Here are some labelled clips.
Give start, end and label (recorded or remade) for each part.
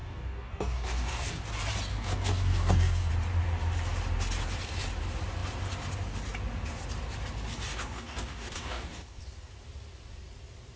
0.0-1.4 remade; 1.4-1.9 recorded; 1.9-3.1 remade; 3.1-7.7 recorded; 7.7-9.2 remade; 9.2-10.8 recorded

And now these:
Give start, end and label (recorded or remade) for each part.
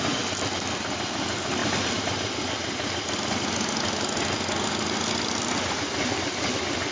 0.0-6.9 recorded